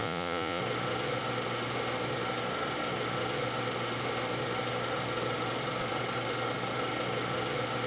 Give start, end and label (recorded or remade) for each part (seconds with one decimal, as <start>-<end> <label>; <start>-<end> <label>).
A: 0.0-0.6 remade; 0.6-7.9 recorded